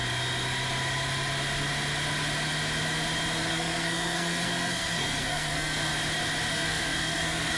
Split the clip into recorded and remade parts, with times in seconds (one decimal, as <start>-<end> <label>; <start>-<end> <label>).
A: 0.0-3.5 recorded; 3.5-5.9 remade; 5.9-6.5 recorded; 6.5-7.6 remade